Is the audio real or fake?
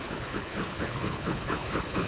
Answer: fake